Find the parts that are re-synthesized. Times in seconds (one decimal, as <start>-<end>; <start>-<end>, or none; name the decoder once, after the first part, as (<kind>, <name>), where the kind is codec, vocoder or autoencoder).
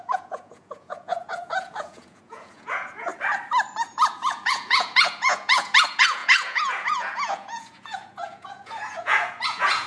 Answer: 0.0-3.1 (vocoder, Vocos); 3.9-9.9